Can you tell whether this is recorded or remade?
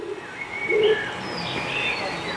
recorded